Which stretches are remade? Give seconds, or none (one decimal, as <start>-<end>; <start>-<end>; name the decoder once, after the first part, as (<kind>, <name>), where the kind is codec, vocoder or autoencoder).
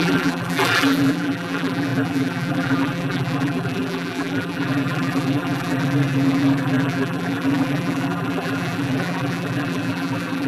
0.0-10.5 (vocoder, BigVGAN v2)